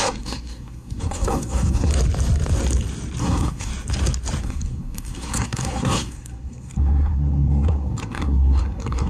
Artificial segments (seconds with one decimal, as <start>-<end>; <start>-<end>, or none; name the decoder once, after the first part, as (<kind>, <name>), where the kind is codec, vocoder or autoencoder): 0.0-1.9 (codec, SNAC); 3.2-3.7; 4.4-9.1